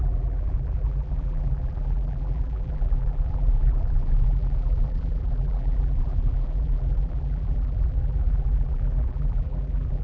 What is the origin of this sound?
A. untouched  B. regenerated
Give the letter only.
B